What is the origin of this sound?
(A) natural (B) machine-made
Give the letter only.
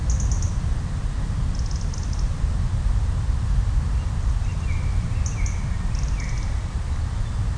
A